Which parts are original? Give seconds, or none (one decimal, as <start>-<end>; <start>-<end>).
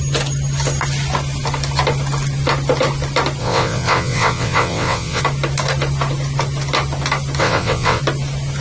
0.0-3.4; 5.2-7.4; 8.0-8.6